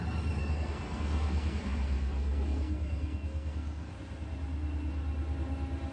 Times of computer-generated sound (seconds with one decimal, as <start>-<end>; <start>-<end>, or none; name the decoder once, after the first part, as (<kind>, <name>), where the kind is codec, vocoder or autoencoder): 0.4-3.9 (codec, SNAC)